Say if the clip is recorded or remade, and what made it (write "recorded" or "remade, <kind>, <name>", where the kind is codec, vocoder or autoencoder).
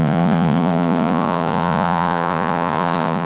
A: remade, vocoder, Vocos